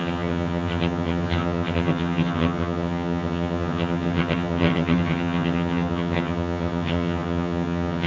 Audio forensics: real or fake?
fake